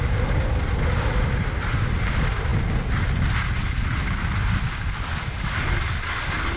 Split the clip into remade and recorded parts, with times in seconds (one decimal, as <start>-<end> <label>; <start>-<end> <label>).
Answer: 0.0-6.6 recorded